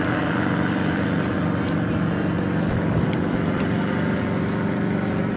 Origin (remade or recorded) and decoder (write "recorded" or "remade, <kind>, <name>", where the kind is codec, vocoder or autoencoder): recorded